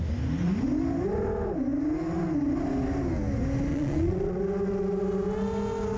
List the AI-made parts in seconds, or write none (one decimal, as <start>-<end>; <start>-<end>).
3.7-4.4